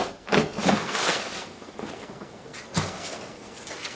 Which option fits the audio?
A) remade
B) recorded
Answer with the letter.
A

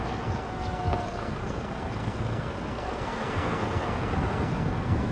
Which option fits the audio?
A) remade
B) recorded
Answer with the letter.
A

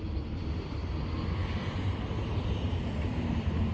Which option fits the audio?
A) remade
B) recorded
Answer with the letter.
B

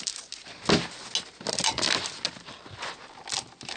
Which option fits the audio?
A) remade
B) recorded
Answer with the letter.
B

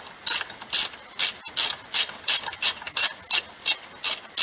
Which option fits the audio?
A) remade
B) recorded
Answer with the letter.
B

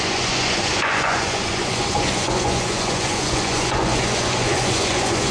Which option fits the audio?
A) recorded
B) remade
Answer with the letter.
B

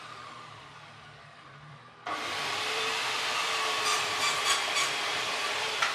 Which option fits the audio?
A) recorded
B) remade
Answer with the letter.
B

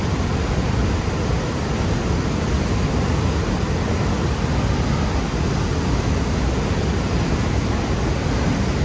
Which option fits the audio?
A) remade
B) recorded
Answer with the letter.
B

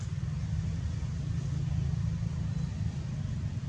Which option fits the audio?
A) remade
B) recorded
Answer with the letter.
B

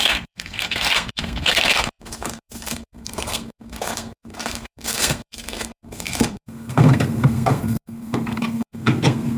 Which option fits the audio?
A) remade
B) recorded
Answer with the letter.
A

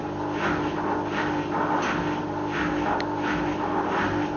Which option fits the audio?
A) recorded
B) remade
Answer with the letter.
A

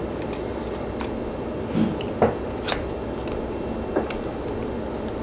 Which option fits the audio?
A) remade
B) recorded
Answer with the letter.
B